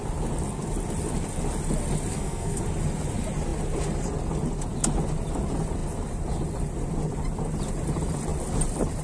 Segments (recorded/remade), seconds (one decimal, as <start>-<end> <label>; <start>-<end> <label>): 0.0-2.1 recorded; 2.1-2.6 remade; 2.6-9.0 recorded

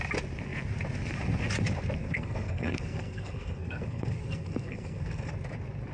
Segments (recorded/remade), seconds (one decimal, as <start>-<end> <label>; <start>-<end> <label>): 0.0-2.0 recorded; 2.0-5.3 remade; 5.3-5.9 recorded

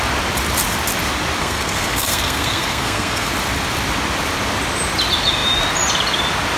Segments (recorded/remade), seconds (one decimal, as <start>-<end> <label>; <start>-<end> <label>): 0.0-1.4 recorded; 1.4-3.3 remade; 3.3-6.6 recorded

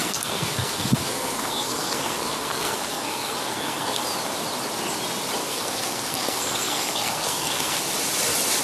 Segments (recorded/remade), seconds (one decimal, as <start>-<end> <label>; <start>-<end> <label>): 0.0-4.0 remade; 4.0-5.4 recorded; 5.4-7.8 remade; 7.8-8.6 recorded

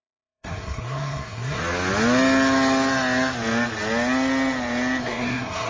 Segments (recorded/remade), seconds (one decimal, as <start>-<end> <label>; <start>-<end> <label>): 0.0-1.6 remade; 1.6-5.0 recorded; 5.0-5.7 remade

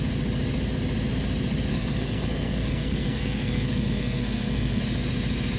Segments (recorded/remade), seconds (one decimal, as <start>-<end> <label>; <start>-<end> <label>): 0.0-1.7 recorded; 1.7-4.8 remade; 4.8-5.6 recorded

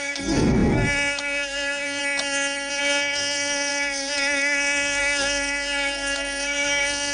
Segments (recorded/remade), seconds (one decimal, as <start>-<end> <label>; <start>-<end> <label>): 0.0-2.0 remade; 2.0-2.8 recorded; 2.8-7.1 remade